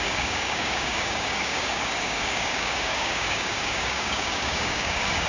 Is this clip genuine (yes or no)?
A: no